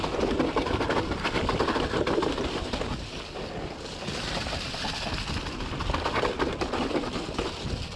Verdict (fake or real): real